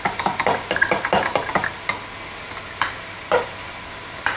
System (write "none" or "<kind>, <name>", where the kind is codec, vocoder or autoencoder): none